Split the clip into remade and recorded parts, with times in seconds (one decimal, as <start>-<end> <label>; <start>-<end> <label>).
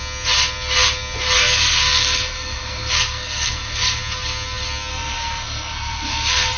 0.0-1.4 recorded; 1.4-4.0 remade; 4.0-4.9 recorded; 4.9-6.6 remade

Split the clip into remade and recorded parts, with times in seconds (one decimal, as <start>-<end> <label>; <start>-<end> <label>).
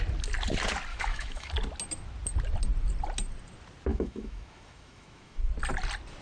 0.0-0.9 recorded; 0.9-1.5 remade; 1.5-3.9 recorded; 3.9-5.5 remade; 5.5-6.2 recorded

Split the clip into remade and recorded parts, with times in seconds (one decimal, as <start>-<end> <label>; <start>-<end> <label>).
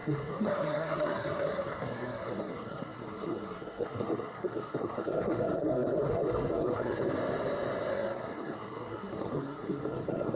0.0-7.1 remade; 7.1-7.9 recorded; 7.9-10.4 remade